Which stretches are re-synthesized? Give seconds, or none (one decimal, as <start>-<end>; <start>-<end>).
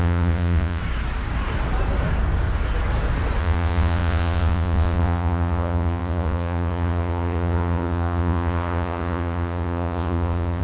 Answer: 0.0-0.8; 3.4-10.6